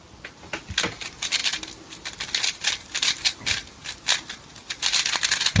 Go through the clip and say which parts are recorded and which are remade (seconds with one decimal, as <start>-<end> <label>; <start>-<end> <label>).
0.0-5.6 recorded